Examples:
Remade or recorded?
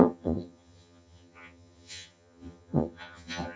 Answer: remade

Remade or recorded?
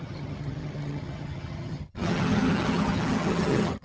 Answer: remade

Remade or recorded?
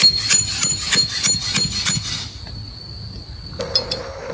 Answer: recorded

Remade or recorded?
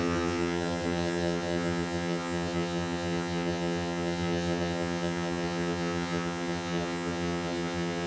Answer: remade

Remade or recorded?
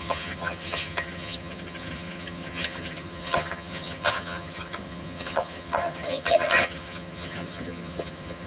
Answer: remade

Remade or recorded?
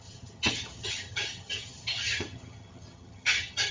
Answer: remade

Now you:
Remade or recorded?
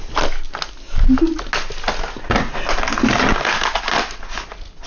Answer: recorded